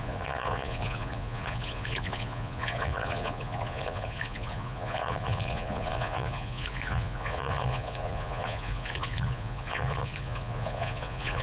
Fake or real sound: fake